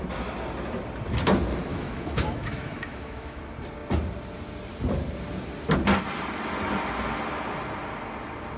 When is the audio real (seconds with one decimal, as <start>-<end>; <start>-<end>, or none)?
0.0-1.7; 3.4-8.6